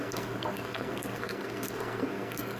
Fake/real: fake